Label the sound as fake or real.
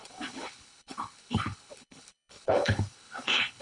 fake